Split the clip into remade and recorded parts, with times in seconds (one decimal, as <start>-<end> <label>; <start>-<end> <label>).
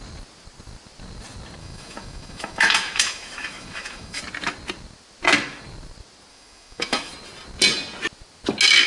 0.0-1.6 recorded; 1.6-4.2 remade; 4.2-6.3 recorded; 6.3-7.1 remade; 7.1-8.9 recorded